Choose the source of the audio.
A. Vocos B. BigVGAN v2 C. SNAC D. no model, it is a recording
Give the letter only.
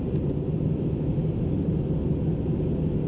D